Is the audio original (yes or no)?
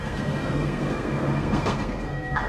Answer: no